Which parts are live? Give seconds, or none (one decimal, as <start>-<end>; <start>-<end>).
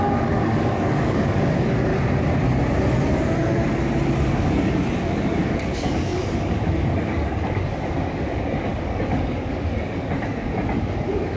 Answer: 1.9-4.2